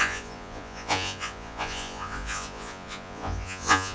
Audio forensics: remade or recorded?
remade